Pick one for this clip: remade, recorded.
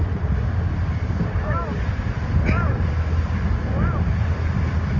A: recorded